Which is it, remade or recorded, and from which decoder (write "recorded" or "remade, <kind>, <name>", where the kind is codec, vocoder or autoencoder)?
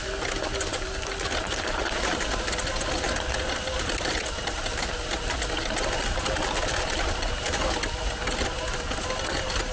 recorded